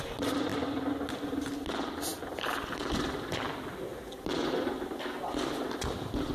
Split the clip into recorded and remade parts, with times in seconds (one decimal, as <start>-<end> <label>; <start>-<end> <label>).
0.0-6.3 recorded